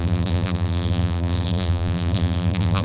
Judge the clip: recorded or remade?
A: remade